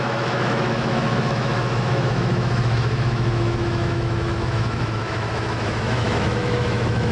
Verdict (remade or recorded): remade